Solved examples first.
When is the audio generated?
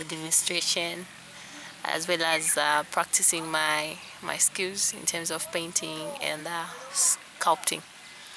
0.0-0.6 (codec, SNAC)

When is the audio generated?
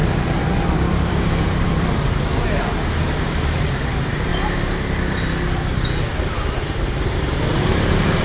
0.0-4.3 (vocoder, BigVGAN v2); 6.1-8.2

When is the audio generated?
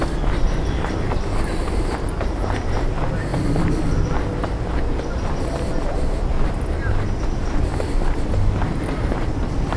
none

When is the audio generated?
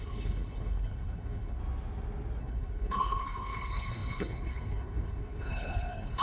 0.0-1.6 (codec, HILCodec); 2.4-6.2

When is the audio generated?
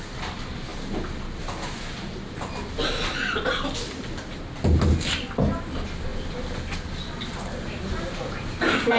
none